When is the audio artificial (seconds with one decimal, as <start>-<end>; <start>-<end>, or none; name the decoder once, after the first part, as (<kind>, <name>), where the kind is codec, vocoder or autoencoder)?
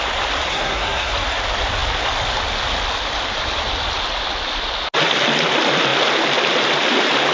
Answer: 0.5-1.1 (codec, SNAC)